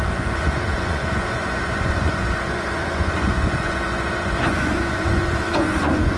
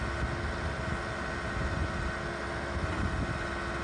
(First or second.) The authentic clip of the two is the second